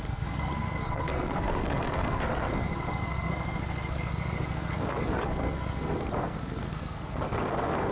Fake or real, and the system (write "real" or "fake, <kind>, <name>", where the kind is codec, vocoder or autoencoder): fake, codec, SNAC